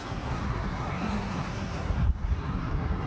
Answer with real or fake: fake